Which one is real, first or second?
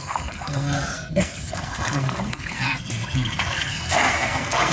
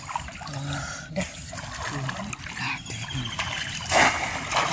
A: second